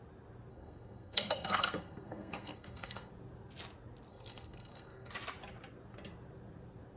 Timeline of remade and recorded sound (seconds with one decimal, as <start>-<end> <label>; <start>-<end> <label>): 0.0-0.5 recorded; 0.5-3.1 remade; 3.1-4.1 recorded; 4.1-5.1 remade; 5.1-7.0 recorded